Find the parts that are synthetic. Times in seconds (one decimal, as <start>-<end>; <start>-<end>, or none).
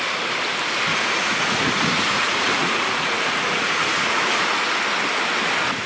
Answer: 0.9-4.4